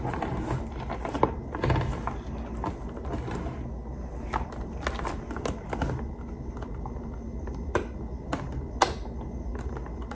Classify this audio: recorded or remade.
recorded